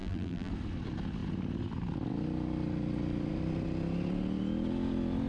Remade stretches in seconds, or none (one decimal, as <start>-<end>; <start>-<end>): 0.0-0.5

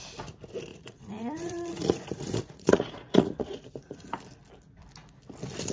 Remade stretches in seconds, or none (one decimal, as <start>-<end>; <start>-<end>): 0.7-4.1

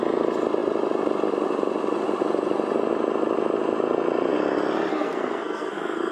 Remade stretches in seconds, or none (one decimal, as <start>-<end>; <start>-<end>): 4.9-6.1

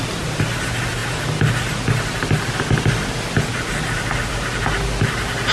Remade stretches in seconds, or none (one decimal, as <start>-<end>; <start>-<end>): none

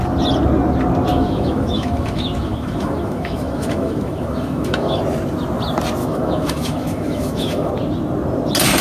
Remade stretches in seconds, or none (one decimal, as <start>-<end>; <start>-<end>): 1.1-5.0; 6.0-7.7

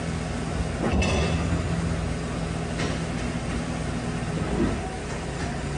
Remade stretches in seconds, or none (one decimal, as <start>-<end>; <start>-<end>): none